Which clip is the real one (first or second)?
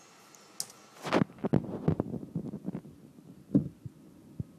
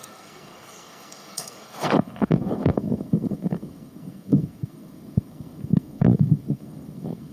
first